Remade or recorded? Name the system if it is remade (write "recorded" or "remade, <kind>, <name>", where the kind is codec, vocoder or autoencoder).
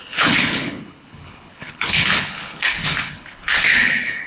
remade, codec, HILCodec